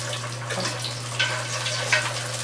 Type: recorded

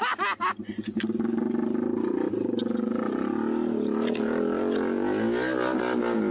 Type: recorded